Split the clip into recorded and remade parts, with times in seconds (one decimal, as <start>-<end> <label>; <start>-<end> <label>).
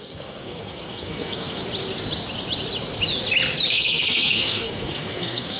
0.0-1.6 remade; 1.6-3.7 recorded; 3.7-5.6 remade